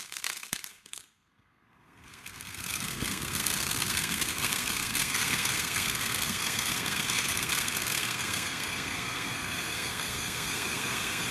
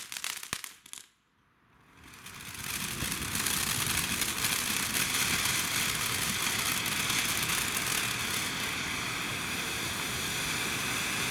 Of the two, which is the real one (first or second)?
second